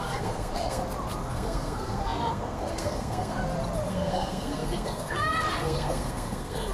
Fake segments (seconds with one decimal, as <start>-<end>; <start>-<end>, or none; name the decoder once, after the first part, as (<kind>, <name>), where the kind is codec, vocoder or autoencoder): 0.0-0.8 (codec, SNAC); 1.3-3.4; 3.9-6.7